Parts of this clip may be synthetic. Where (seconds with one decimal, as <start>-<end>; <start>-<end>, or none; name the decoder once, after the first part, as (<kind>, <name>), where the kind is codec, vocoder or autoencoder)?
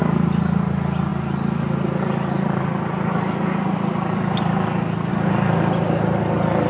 none